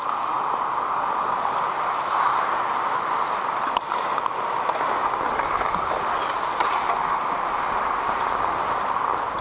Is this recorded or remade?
recorded